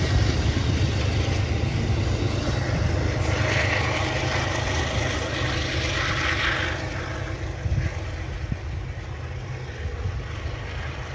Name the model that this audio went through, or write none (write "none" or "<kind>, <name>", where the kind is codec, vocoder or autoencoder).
none